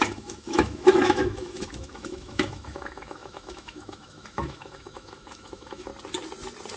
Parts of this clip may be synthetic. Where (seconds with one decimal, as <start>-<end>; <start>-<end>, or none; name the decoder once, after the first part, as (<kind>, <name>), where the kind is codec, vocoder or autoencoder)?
0.0-5.9 (autoencoder, DAC-VAE)